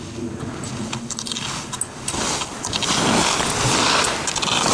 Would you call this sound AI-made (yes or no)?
no